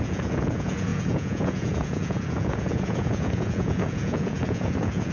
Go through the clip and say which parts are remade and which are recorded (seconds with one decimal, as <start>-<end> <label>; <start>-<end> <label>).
0.0-5.1 remade